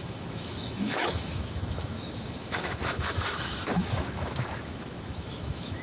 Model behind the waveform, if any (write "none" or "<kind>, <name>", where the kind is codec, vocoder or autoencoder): autoencoder, DAC-VAE